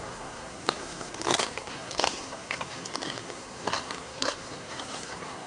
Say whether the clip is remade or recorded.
remade